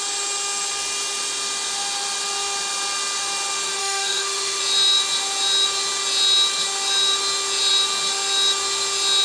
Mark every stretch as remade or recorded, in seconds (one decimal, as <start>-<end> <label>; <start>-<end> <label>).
0.0-3.8 recorded; 3.8-4.6 remade; 4.6-9.2 recorded